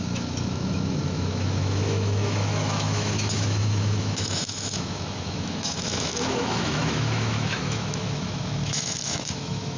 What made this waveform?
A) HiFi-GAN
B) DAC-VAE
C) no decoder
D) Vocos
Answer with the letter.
B